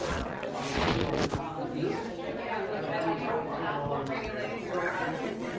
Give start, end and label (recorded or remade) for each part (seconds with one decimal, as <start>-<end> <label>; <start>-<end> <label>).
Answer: 0.0-1.2 remade; 1.2-4.6 recorded; 4.6-5.6 remade